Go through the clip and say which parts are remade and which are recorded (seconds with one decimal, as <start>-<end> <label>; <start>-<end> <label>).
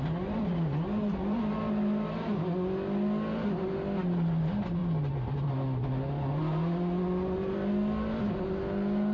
0.0-9.1 recorded